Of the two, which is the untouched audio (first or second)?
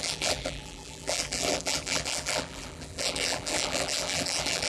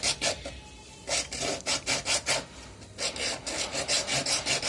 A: second